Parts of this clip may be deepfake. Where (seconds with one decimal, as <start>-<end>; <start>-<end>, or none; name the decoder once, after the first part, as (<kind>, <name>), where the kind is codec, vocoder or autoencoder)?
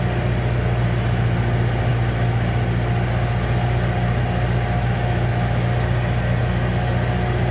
none